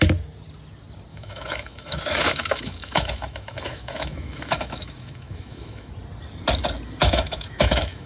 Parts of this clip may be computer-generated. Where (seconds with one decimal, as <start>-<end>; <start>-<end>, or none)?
1.1-5.9; 7.0-8.1